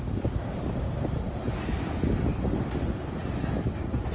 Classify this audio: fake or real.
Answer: real